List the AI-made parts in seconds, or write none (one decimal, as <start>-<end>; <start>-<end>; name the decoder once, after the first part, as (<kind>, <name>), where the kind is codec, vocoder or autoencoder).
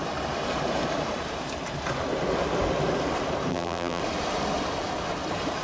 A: 3.5-4.0 (vocoder, BigVGAN v2)